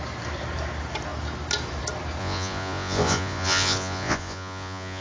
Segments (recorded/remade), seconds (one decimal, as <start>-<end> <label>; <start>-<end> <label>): 0.0-2.2 recorded; 2.2-5.0 remade